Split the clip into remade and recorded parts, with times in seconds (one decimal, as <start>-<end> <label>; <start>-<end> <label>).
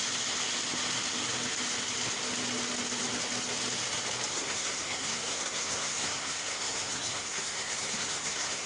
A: 0.0-4.3 recorded; 4.3-8.7 remade